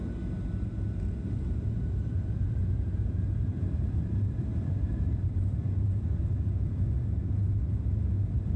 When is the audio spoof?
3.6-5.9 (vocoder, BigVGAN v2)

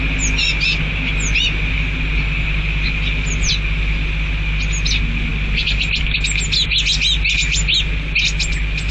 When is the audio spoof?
none

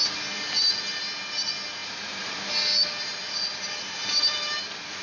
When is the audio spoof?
1.8-2.5 (vocoder, BigVGAN v2); 3.5-4.6

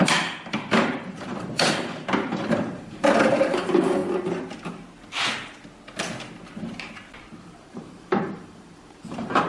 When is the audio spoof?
0.0-4.0 (vocoder, BigVGAN v2); 7.4-9.5